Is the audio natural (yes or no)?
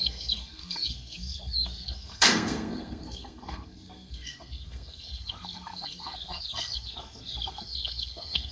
no